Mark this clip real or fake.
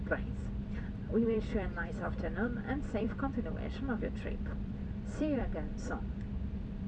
fake